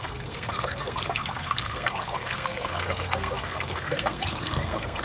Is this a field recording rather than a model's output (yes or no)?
no